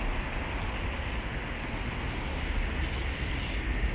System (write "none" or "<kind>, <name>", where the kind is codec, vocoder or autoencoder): none